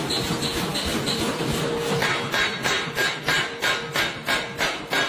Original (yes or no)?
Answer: yes